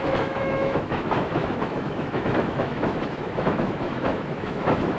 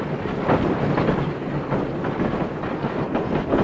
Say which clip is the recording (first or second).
second